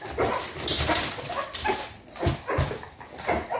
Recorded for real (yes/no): yes